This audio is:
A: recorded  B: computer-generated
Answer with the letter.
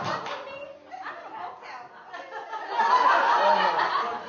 A